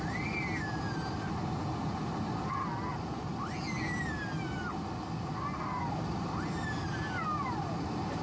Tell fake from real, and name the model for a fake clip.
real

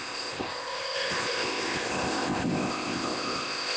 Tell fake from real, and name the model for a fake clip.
fake, codec, ZipCodec